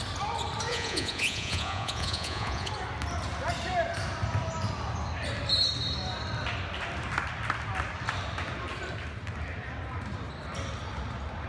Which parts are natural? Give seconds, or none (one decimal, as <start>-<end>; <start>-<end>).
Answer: 0.0-0.7; 2.7-11.5